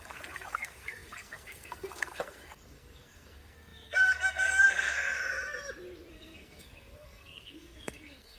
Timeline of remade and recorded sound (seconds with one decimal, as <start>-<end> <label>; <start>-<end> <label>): 0.0-5.2 remade; 5.2-6.1 recorded; 6.1-8.4 remade